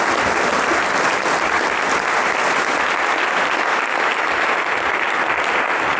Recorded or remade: recorded